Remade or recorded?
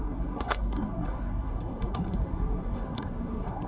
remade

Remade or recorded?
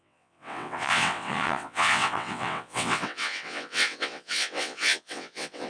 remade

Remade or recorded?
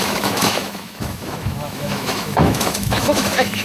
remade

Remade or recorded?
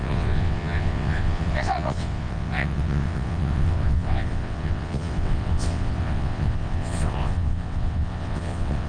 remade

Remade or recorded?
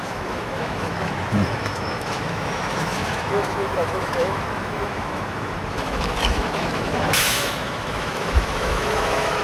remade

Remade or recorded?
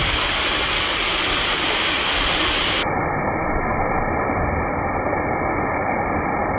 remade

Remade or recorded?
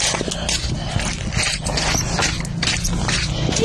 recorded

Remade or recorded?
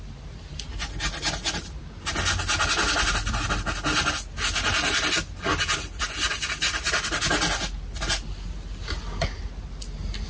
recorded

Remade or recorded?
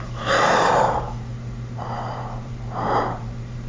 remade